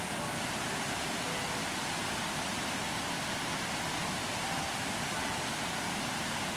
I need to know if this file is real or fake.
real